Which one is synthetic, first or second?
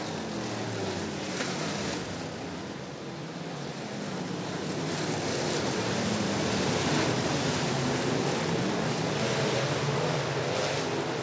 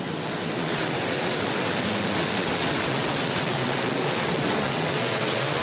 second